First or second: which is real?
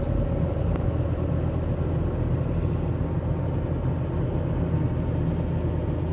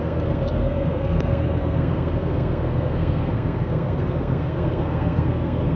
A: first